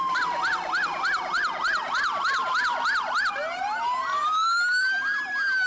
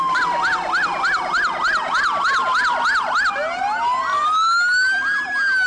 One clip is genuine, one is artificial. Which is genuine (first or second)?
second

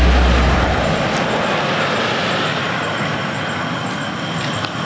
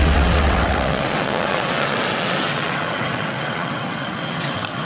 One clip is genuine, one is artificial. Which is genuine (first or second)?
first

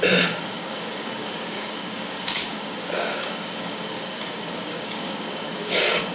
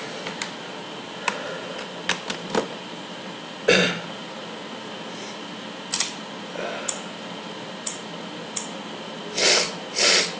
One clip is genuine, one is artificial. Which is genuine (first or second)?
second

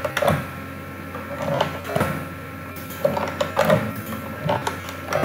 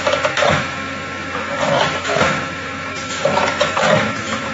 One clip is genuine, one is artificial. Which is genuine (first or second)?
first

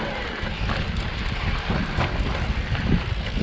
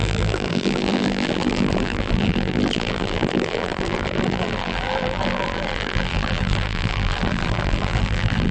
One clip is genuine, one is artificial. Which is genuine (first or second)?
first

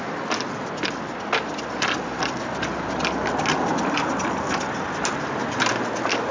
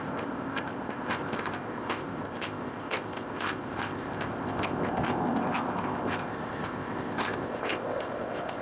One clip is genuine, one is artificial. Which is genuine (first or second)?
first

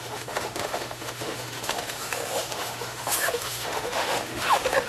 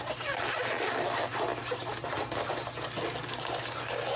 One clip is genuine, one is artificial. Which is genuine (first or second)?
second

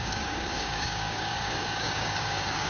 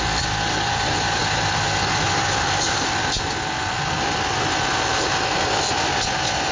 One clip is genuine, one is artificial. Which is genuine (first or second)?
second